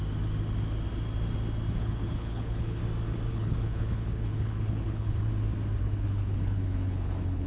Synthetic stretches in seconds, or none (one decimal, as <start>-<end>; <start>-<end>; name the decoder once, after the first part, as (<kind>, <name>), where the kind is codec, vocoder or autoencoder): 1.8-2.8 (codec, HILCodec); 3.3-5.3; 5.8-7.5